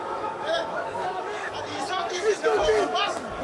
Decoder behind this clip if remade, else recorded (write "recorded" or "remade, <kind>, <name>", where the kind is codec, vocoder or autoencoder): remade, codec, DAC